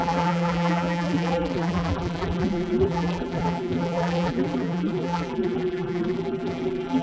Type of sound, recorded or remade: remade